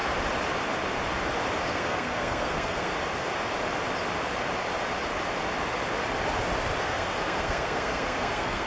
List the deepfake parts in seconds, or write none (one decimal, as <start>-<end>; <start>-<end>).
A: 1.7-2.9; 6.8-8.7